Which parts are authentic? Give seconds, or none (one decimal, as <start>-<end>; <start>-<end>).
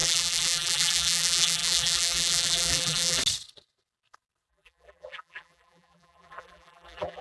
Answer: 3.2-4.5